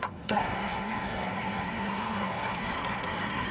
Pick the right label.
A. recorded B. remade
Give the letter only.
B